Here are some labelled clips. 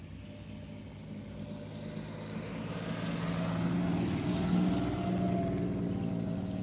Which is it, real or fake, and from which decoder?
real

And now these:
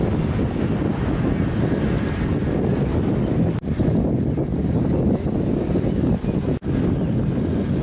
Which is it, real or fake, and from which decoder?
real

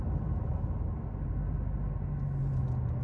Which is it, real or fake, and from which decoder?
real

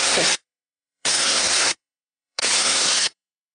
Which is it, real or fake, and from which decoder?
fake, codec, SNAC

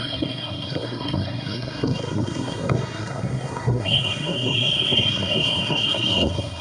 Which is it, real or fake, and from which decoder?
fake, codec, SNAC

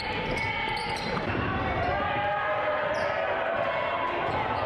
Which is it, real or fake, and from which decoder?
real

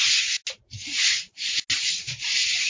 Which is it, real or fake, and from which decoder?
real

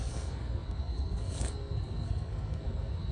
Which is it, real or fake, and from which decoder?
fake, codec, SNAC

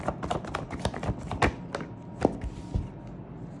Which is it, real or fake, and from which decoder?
real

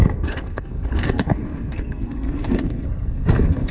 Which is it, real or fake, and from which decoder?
fake, codec, SNAC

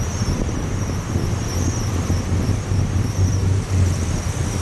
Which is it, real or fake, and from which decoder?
real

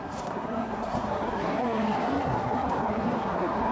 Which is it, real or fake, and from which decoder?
fake, codec, SNAC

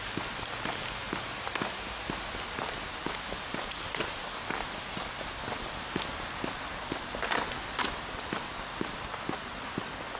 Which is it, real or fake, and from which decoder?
real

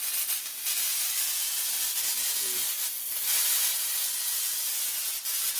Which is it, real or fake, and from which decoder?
real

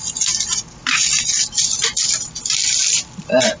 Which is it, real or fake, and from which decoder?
real